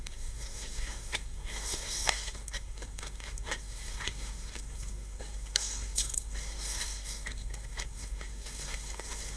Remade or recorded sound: remade